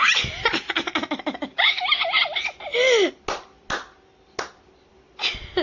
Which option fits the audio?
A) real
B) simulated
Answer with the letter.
A